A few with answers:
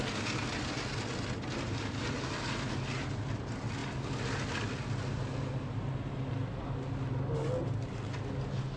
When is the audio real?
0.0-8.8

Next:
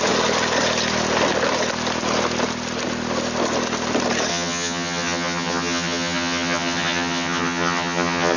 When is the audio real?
0.0-4.3